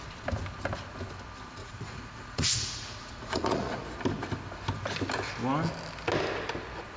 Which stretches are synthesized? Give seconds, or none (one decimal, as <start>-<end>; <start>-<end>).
1.6-3.8